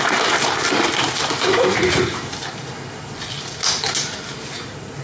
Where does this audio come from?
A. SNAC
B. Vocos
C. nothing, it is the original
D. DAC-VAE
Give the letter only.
C